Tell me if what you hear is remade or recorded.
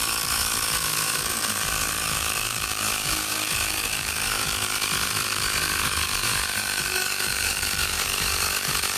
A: remade